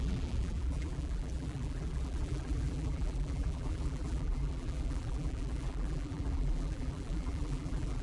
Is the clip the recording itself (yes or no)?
no